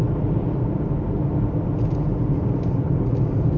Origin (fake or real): real